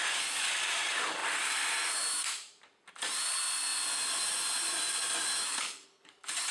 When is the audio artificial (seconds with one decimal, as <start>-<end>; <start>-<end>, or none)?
5.5-6.1